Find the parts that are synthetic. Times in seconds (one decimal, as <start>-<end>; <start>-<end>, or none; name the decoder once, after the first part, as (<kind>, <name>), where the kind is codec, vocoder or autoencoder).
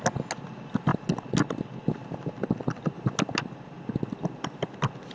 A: none